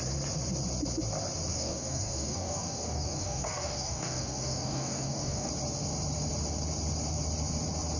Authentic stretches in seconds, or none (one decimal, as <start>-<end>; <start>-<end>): 0.0-1.5; 5.5-8.0